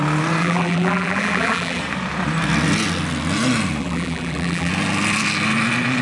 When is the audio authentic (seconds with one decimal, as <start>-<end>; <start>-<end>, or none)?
0.0-0.4; 1.8-3.8; 4.7-6.0